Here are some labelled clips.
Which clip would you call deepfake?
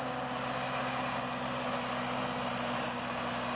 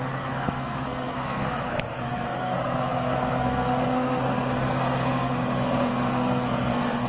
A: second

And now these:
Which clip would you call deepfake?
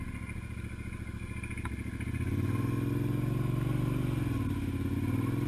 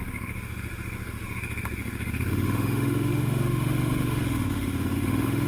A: second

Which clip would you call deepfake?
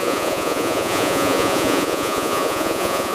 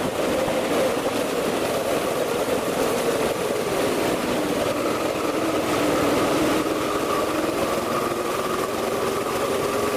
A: first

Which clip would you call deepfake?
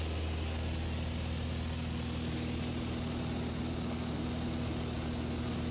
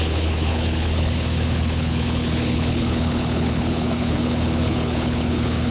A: second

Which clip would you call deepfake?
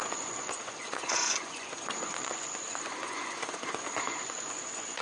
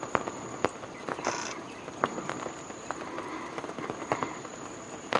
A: first